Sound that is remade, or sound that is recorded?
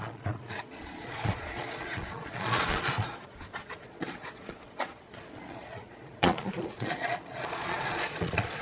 remade